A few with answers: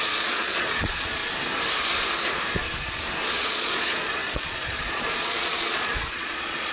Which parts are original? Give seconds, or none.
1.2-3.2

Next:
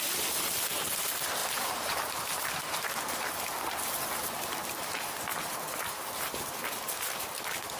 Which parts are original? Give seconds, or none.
0.0-1.4; 3.0-7.8

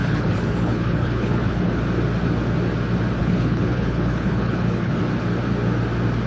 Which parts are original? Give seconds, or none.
1.8-3.2; 5.0-6.3

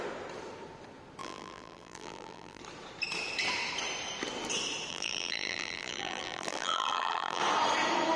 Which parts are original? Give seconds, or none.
0.0-1.2; 2.6-4.9; 7.4-8.2

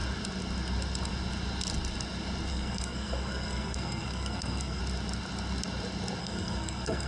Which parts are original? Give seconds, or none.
0.0-2.5; 4.8-6.2